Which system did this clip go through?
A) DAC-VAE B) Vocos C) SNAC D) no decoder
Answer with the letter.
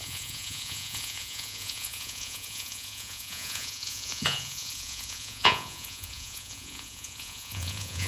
B